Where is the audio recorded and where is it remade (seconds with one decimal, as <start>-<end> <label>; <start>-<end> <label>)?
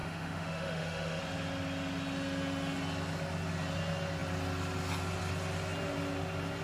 0.0-1.2 remade; 1.2-6.6 recorded